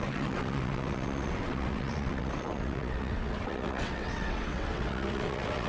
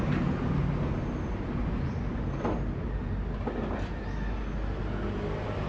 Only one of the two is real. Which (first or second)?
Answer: second